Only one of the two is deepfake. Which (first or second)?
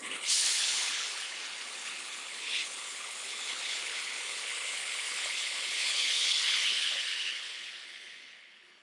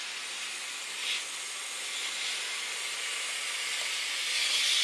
first